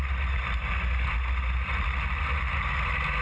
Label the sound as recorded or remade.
recorded